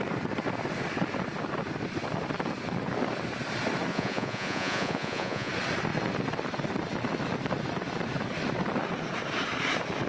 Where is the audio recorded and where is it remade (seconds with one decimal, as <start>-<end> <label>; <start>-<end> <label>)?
0.0-3.9 recorded; 3.9-5.5 remade; 5.5-10.1 recorded